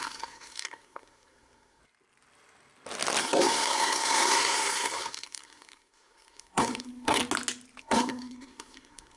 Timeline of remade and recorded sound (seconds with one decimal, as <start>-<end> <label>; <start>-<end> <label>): 0.0-1.8 remade; 1.8-3.2 recorded; 3.2-7.2 remade; 7.2-7.8 recorded; 7.8-9.2 remade